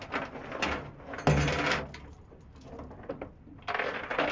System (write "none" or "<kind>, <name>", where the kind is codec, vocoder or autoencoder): none